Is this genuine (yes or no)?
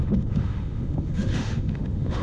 no